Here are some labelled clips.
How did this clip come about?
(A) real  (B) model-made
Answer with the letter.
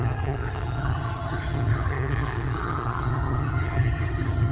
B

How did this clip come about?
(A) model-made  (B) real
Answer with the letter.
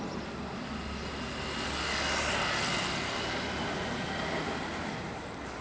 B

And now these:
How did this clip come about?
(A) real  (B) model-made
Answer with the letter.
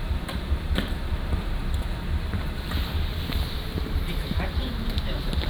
B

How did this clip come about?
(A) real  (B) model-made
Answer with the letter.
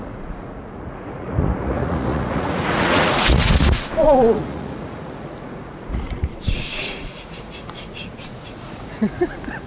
B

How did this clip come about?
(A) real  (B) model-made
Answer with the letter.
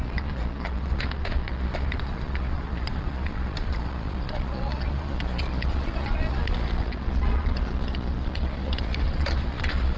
B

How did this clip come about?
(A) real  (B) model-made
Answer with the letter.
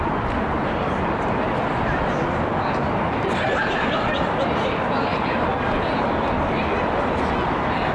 A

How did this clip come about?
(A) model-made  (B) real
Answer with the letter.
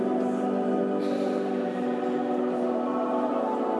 A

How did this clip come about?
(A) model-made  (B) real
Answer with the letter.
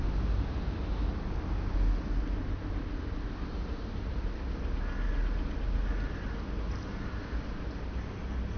B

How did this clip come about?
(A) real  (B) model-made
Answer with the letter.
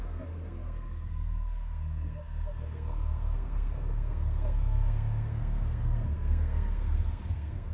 B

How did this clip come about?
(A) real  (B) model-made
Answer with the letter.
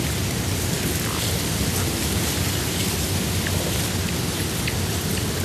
A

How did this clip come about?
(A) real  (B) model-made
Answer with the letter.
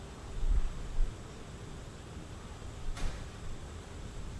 A